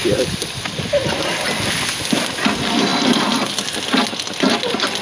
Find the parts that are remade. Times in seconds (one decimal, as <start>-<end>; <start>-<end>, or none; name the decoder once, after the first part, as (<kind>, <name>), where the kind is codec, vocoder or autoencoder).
none